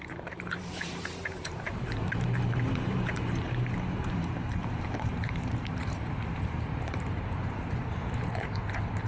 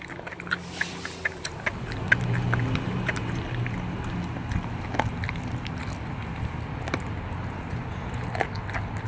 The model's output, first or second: first